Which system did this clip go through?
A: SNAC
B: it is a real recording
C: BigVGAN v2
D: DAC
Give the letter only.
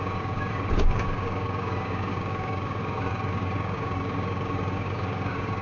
D